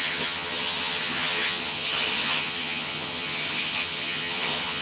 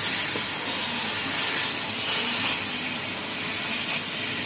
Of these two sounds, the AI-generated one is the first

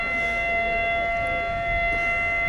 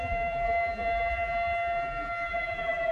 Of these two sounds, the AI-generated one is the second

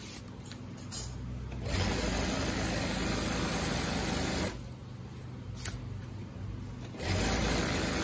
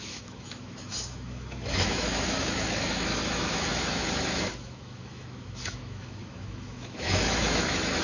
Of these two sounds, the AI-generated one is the second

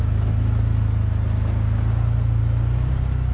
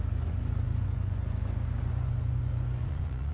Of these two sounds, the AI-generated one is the second